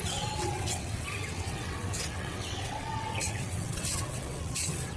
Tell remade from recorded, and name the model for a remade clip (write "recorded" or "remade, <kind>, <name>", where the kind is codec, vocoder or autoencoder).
remade, vocoder, WaveNeXt